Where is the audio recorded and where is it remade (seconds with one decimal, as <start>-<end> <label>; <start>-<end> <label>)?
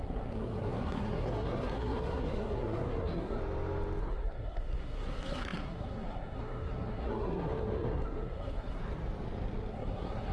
0.0-3.4 remade; 3.4-4.0 recorded; 4.0-8.8 remade; 8.8-9.7 recorded; 9.7-10.3 remade